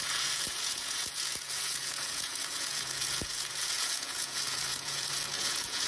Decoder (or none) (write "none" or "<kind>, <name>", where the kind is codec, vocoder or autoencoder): vocoder, Vocos